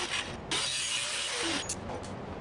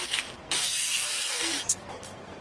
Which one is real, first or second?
first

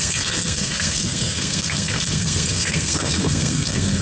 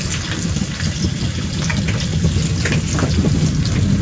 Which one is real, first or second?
second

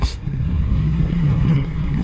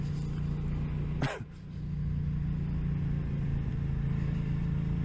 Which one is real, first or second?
second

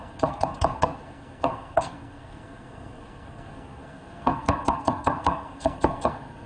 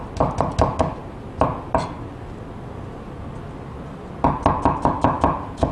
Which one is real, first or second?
second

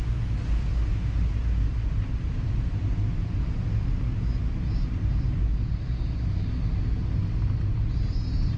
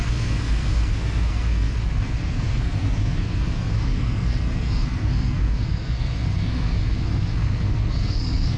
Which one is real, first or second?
first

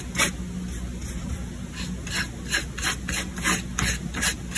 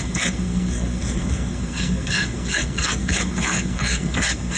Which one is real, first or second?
first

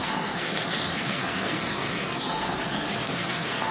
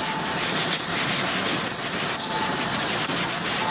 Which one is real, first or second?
second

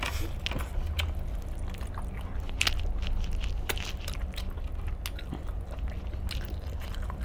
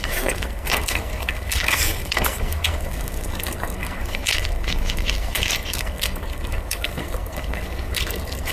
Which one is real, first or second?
first